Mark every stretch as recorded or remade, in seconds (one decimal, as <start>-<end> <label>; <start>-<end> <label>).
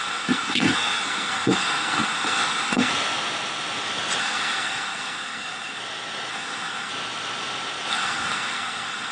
0.0-2.9 remade; 2.9-4.2 recorded; 4.2-5.8 remade; 5.8-6.3 recorded; 6.3-6.9 remade; 6.9-7.9 recorded; 7.9-9.1 remade